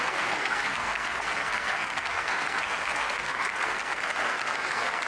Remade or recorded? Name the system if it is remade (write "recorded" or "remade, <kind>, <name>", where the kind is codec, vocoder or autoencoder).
remade, codec, SNAC